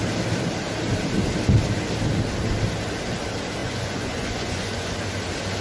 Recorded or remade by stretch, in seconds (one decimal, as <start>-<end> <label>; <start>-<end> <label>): 0.0-3.6 recorded; 3.6-4.9 remade; 4.9-5.6 recorded